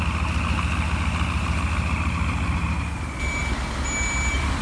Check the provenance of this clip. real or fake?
real